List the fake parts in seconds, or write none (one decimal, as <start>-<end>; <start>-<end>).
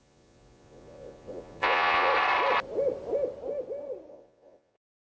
0.0-2.1; 4.1-5.0